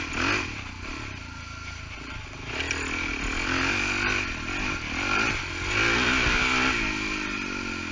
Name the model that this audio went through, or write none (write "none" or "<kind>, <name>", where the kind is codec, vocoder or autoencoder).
none